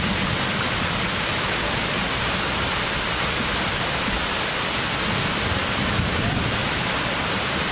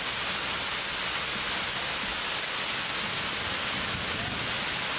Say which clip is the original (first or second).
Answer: second